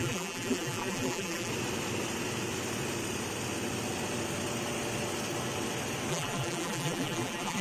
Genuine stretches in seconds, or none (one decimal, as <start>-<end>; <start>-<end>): 1.5-6.1